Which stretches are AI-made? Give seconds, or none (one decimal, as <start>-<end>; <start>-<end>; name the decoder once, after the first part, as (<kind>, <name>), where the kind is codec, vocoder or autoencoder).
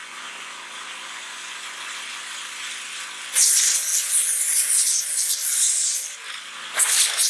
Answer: 0.0-0.5 (vocoder, Vocos); 1.0-2.2